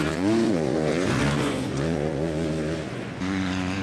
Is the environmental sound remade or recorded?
remade